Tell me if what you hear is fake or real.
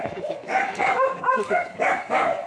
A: fake